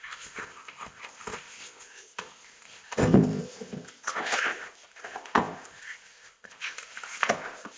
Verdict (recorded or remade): remade